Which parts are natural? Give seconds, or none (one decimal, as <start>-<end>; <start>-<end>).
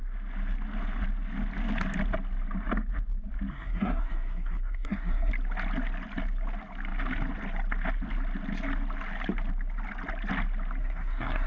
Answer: 0.0-3.5; 5.3-10.8